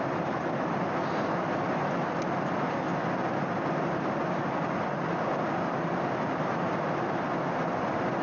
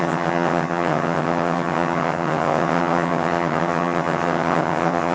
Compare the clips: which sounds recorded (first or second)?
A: first